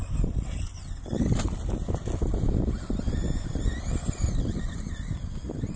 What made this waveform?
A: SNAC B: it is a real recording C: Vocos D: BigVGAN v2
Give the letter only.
B